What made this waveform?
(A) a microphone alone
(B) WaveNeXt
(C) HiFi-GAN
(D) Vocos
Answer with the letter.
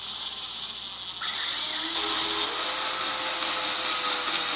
A